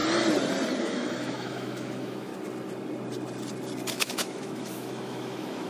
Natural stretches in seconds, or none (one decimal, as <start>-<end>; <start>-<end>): 0.0-0.8; 2.3-3.9